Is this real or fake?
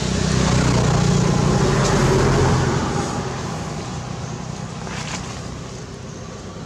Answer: real